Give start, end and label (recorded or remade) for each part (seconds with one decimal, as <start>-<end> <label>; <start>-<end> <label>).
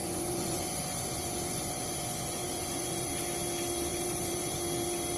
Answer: 0.0-3.1 remade; 3.1-3.9 recorded; 3.9-4.6 remade; 4.6-5.2 recorded